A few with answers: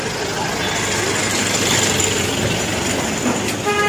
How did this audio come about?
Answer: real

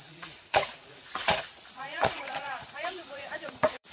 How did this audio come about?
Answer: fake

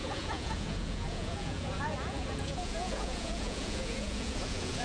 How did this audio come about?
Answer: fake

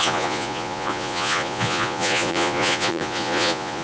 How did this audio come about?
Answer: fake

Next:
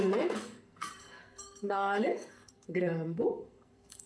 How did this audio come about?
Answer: fake